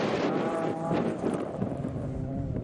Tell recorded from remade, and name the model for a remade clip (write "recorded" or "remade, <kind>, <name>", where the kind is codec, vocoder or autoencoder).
remade, vocoder, BigVGAN v2